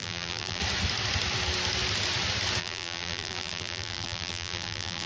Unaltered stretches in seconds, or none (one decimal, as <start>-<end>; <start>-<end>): 0.6-2.6